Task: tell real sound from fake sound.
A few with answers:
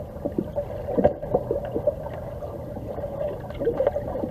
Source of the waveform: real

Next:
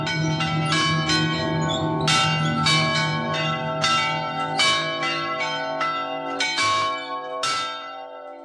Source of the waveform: real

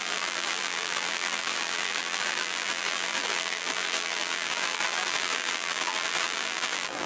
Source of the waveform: fake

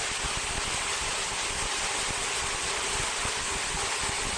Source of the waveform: real